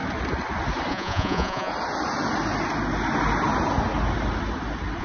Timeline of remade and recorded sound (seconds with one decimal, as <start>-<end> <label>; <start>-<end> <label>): 0.0-0.9 recorded; 0.9-1.7 remade; 1.7-5.0 recorded